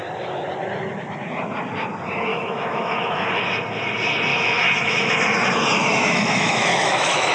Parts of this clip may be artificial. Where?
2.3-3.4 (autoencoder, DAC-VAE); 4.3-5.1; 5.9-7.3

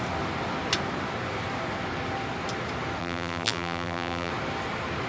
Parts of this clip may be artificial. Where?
3.0-4.3 (vocoder, BigVGAN v2)